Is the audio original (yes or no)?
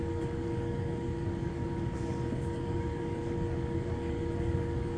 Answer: no